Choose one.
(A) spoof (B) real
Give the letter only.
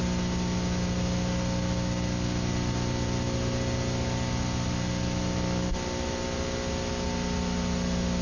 B